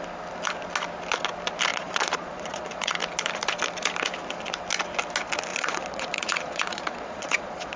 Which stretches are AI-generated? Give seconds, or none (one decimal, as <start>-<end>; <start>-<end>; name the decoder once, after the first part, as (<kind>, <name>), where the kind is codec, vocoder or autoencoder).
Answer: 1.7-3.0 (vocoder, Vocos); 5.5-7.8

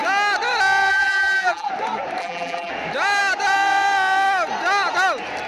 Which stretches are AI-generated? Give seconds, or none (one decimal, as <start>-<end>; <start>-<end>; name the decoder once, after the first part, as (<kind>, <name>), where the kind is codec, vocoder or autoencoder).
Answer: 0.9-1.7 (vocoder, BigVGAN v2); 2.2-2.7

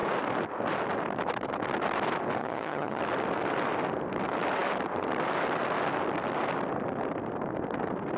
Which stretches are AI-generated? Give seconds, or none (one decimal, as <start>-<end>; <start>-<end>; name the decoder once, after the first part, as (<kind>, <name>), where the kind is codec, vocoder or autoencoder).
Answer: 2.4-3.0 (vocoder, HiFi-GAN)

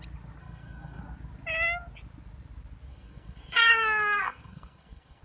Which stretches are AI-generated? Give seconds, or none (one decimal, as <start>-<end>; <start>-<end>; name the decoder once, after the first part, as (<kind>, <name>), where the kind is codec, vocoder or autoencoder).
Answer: 0.4-1.0 (codec, SNAC); 2.9-5.2

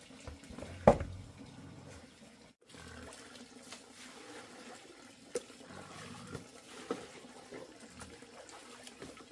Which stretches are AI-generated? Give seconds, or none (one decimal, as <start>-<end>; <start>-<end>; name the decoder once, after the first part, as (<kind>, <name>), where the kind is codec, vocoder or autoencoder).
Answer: none